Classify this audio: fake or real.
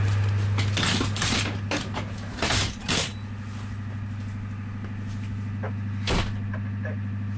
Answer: real